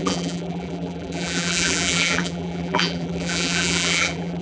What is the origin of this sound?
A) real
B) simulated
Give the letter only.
B